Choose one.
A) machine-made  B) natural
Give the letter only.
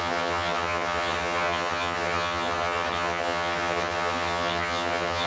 A